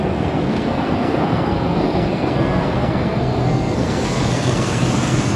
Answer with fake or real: fake